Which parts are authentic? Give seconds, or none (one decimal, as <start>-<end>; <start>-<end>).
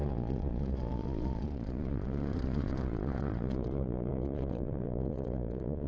none